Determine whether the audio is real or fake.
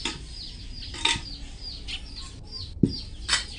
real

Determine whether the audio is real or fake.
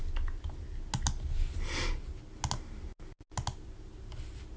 real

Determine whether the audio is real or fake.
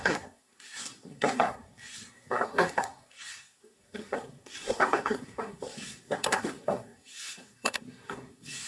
fake